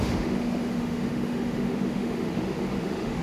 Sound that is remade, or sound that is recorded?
remade